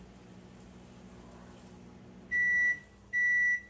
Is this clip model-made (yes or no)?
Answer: no